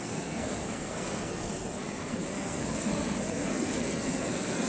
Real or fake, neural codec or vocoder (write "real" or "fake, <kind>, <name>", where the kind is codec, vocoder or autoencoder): fake, codec, SNAC